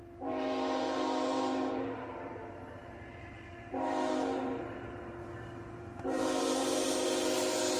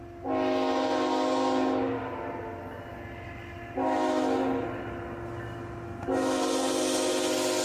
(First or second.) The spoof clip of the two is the first